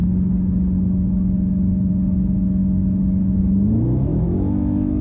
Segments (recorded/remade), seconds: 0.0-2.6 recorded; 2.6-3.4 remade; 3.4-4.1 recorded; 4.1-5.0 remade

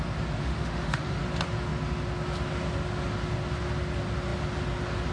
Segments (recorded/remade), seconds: 0.0-0.5 recorded; 0.5-1.2 remade; 1.2-5.1 recorded

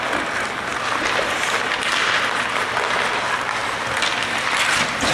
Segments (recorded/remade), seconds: 0.0-5.1 recorded

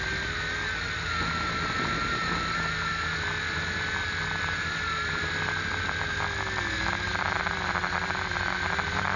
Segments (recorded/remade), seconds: 0.0-9.2 recorded